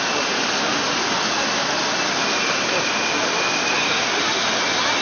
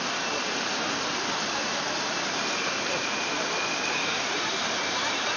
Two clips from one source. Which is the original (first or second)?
first